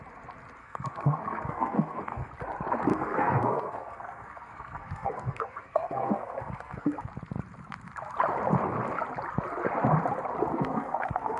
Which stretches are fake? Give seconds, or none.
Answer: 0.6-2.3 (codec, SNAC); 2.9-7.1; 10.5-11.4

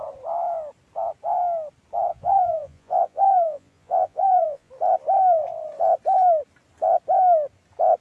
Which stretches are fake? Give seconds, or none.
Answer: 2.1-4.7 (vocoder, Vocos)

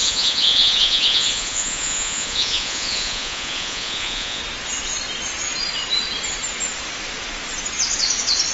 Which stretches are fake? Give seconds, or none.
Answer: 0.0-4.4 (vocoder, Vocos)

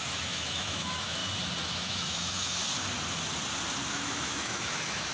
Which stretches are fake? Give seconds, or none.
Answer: 0.0-1.2 (autoencoder, DAC-VAE); 1.7-2.6; 3.9-5.1

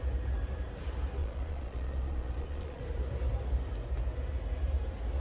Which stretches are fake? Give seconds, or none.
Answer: 1.2-2.8 (vocoder, Vocos)